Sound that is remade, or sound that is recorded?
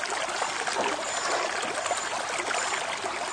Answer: recorded